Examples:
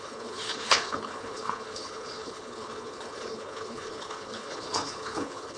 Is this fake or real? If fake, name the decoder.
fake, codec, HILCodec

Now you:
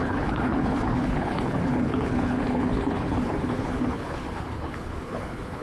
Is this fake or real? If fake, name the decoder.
fake, codec, HILCodec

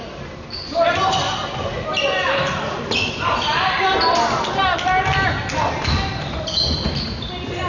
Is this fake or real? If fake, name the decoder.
real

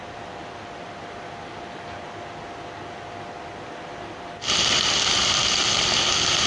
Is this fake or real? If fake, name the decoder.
real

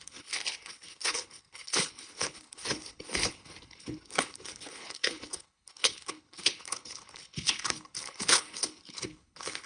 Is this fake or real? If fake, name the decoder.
fake, codec, HILCodec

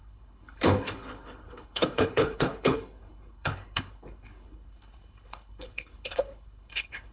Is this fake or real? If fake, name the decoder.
fake, codec, HILCodec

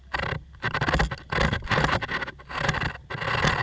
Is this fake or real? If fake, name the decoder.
real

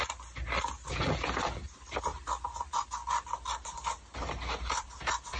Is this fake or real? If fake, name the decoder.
real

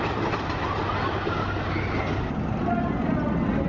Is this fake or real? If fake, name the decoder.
real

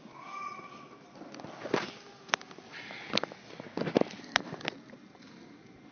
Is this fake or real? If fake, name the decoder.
real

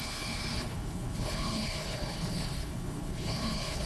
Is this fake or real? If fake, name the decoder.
fake, codec, HILCodec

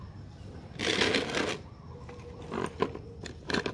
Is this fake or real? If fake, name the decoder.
real